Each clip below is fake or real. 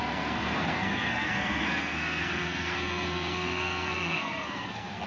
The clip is fake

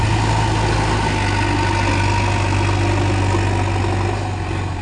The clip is real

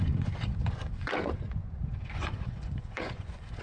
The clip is fake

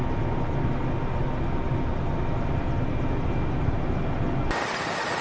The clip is real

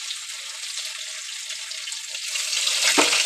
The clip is real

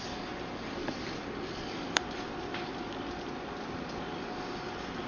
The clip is real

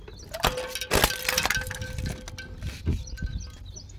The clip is real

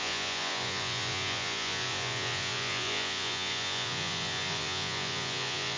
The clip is fake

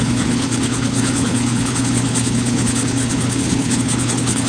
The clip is fake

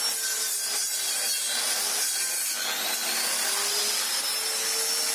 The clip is real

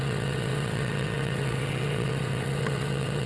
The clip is fake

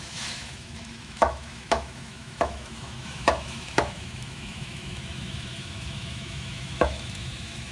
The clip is fake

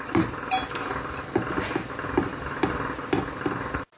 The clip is real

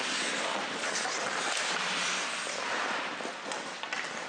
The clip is real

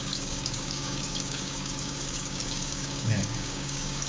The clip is fake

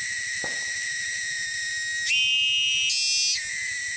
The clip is real